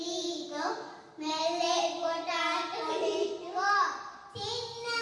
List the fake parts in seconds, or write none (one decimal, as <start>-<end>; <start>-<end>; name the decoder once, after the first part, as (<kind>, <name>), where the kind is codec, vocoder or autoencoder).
none